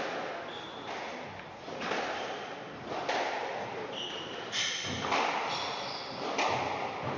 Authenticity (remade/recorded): recorded